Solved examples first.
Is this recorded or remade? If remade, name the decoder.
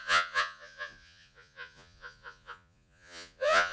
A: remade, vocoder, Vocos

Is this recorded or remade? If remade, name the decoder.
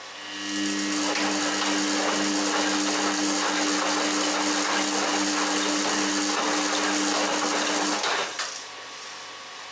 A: recorded